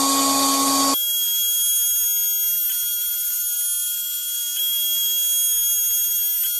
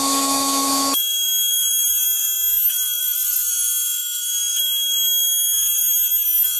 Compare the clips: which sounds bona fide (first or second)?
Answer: first